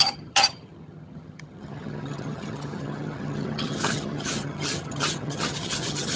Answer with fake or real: fake